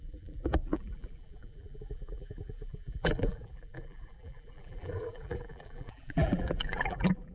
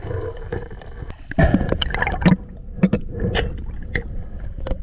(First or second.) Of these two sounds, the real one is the second